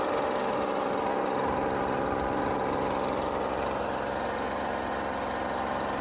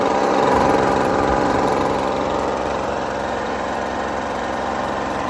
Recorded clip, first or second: first